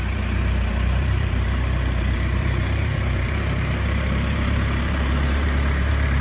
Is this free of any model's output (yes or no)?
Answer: no